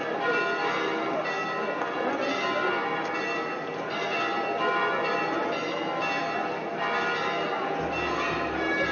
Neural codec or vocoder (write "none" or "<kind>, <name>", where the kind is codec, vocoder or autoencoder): none